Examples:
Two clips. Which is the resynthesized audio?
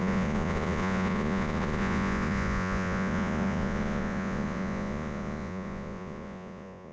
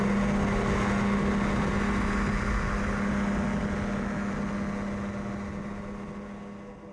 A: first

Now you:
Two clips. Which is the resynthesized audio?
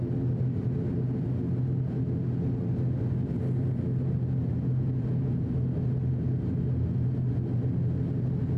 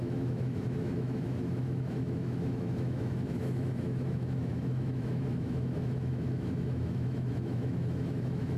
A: second